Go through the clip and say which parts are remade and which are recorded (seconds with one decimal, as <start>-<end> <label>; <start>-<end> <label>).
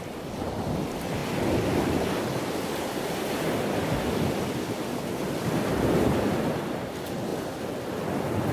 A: 0.0-8.5 recorded